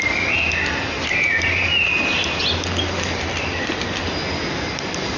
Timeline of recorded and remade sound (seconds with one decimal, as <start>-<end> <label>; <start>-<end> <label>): 0.0-5.2 recorded